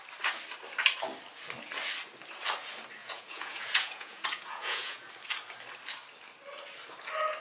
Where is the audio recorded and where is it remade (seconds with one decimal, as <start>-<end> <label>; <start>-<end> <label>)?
0.0-3.0 recorded; 3.0-5.1 remade; 5.1-7.4 recorded